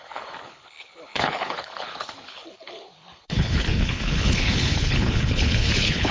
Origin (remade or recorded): remade